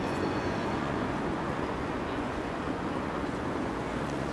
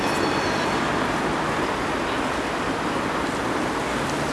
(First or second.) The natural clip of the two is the second